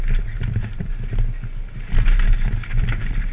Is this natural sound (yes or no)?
yes